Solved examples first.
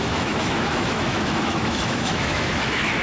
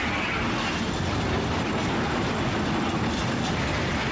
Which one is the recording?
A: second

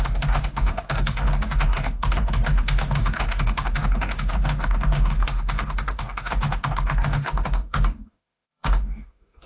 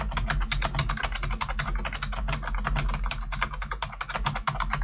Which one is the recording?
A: second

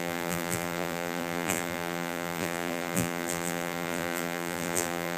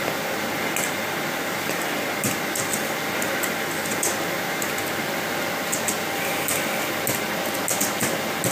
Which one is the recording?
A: second